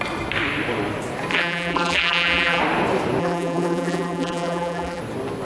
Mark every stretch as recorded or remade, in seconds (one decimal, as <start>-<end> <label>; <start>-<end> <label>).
0.0-1.3 recorded; 1.3-2.6 remade; 2.6-3.2 recorded; 3.2-5.0 remade; 5.0-5.4 recorded